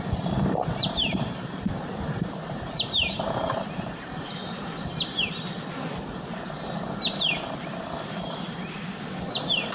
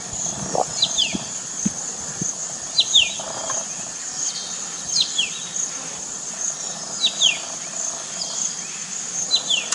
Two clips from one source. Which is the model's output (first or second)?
first